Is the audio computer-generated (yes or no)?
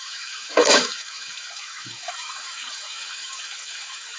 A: yes